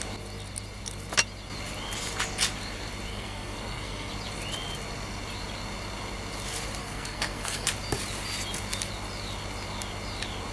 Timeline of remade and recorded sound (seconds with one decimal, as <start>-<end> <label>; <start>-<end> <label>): 0.0-3.1 recorded; 3.1-4.1 remade; 4.1-6.8 recorded; 6.8-7.7 remade; 7.7-10.5 recorded